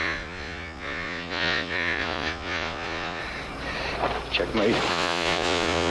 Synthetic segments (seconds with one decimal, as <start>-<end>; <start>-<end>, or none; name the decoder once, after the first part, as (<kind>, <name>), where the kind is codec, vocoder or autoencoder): 0.0-3.2 (vocoder, Vocos); 4.9-5.9

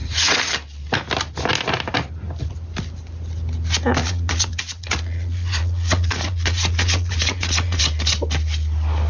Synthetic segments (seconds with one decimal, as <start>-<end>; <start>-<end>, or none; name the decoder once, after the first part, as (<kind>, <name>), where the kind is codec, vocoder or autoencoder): 0.0-0.5 (vocoder, Vocos); 4.0-7.8

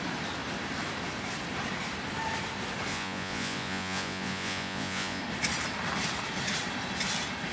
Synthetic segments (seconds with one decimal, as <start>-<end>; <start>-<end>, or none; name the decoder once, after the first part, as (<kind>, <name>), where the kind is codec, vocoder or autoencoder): 2.9-5.2 (vocoder, Vocos)

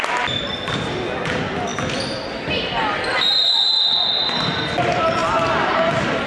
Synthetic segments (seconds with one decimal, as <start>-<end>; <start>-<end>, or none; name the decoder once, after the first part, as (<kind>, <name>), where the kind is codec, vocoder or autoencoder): none

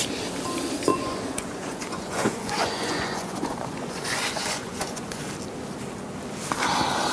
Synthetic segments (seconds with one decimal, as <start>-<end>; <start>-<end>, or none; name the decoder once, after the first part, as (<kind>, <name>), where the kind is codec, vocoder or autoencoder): 0.9-5.2 (vocoder, Vocos)

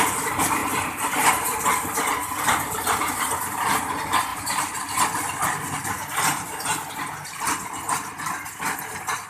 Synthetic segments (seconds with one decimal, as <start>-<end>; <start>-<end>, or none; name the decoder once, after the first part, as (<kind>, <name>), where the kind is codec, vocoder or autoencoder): none

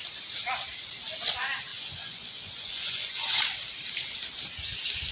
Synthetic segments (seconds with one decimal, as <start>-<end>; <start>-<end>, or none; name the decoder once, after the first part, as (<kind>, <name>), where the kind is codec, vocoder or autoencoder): 1.7-3.4 (vocoder, Vocos)